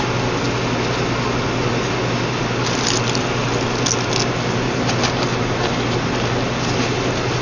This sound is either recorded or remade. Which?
recorded